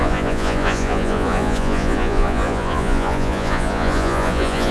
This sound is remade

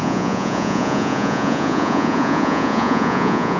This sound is remade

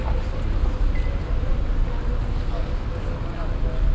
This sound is recorded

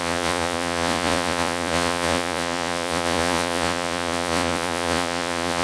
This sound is remade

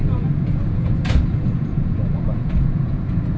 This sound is remade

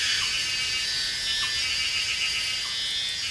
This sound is recorded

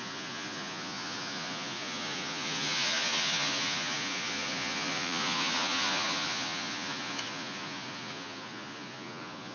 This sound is remade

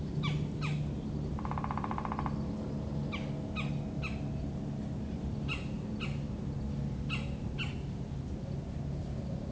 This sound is recorded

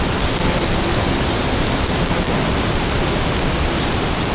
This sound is recorded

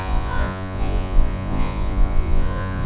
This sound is remade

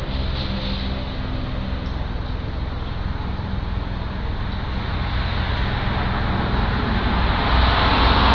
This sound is recorded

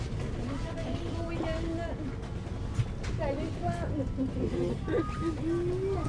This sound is recorded